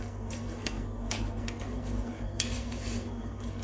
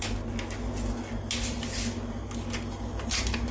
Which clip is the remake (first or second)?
first